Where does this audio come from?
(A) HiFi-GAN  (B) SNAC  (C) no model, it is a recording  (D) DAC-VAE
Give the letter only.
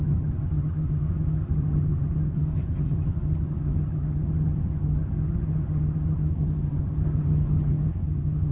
A